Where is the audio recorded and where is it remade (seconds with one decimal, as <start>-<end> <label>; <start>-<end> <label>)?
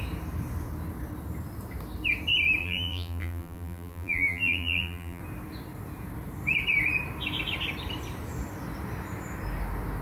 0.0-2.6 recorded; 2.6-5.2 remade; 5.2-10.0 recorded